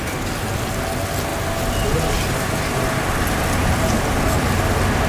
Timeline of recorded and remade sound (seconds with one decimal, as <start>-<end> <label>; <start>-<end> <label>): 0.0-5.1 recorded